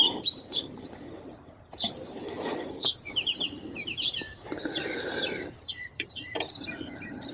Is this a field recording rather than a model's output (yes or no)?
no